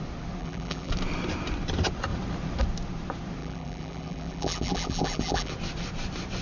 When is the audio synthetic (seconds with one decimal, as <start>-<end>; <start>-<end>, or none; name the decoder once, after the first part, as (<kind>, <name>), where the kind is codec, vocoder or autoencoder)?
0.4-0.9 (vocoder, BigVGAN v2); 3.4-5.5